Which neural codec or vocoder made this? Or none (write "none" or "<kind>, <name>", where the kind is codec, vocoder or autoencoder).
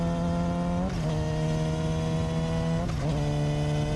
none